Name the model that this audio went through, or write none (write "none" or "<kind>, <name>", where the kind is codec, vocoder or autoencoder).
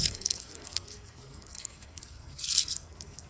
codec, SNAC